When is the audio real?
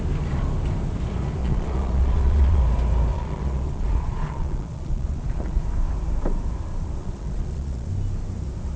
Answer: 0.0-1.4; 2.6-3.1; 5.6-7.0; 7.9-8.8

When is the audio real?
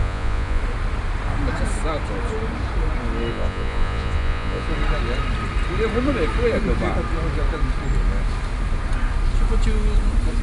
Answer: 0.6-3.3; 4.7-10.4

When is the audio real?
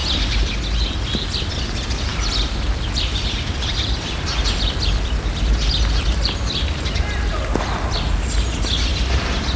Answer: 1.5-2.1; 6.9-9.6